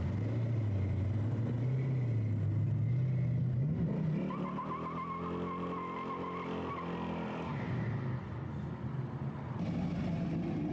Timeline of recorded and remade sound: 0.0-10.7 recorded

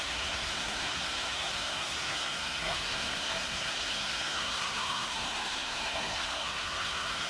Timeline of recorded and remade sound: 0.0-7.3 remade

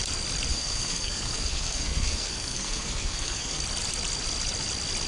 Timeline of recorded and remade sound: 0.0-0.5 recorded; 0.5-3.6 remade; 3.6-5.1 recorded

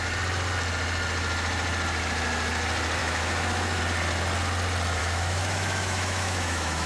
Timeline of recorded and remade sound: 0.0-3.0 recorded; 3.0-3.8 remade; 3.8-5.0 recorded; 5.0-6.9 remade

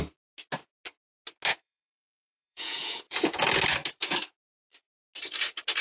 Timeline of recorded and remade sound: 0.0-1.5 recorded; 1.5-3.4 remade; 3.4-5.8 recorded

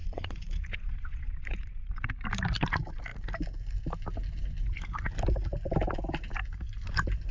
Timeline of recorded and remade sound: 0.0-2.1 remade; 2.1-7.3 recorded